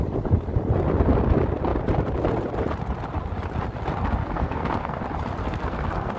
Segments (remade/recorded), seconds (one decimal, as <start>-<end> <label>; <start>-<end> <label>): 0.0-4.2 recorded; 4.2-5.0 remade; 5.0-5.4 recorded; 5.4-6.2 remade